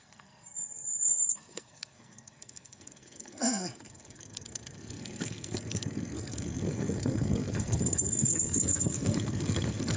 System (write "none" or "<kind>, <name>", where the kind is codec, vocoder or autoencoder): codec, SNAC